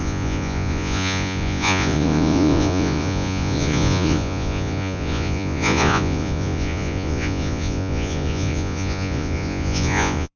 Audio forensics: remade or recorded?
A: remade